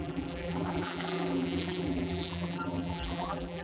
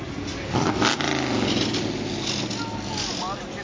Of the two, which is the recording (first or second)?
second